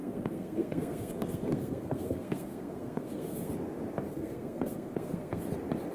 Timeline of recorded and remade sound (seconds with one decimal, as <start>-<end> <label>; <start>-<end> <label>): 0.0-3.5 remade; 3.5-4.1 recorded; 4.1-5.4 remade; 5.4-5.9 recorded